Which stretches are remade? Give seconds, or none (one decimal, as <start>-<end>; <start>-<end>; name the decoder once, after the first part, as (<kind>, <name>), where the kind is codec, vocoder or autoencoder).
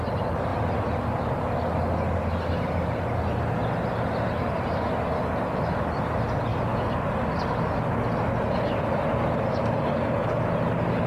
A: none